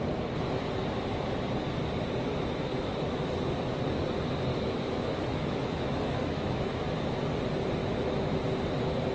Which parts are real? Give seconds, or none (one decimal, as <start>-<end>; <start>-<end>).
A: 0.0-2.7; 3.3-4.5; 7.2-7.8; 8.3-9.1